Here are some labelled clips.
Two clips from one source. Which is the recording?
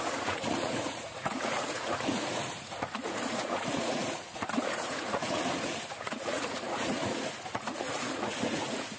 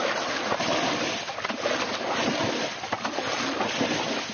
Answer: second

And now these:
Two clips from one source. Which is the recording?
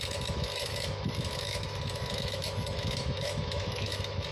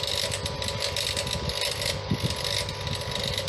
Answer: second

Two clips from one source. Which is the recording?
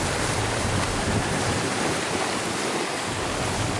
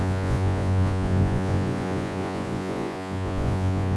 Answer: first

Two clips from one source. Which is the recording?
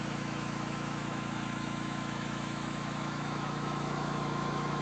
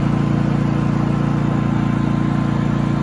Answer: second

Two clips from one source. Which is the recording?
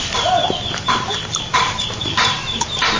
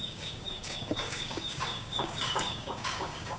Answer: first